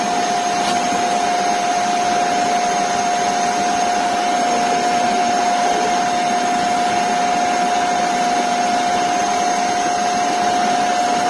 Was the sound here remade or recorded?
remade